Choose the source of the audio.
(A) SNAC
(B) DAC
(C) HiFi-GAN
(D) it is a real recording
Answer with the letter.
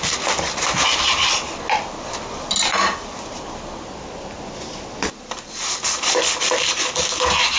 D